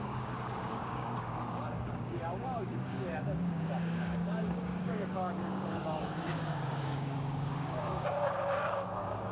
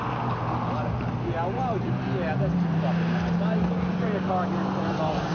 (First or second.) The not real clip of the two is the first